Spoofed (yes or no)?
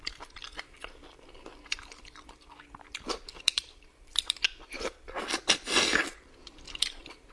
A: yes